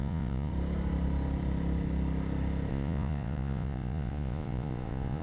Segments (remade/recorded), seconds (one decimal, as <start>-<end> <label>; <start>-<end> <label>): 0.0-0.5 remade; 0.5-2.7 recorded; 2.7-5.2 remade